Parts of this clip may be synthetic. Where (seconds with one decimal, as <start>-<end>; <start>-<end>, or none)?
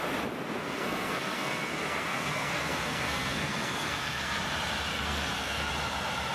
0.6-4.4; 4.9-5.7